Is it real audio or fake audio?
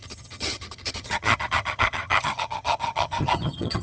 fake